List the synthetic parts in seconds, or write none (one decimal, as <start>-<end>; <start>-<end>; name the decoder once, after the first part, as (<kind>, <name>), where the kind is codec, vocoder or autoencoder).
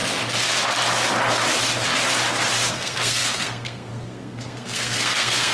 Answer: 2.7-5.5 (codec, SNAC)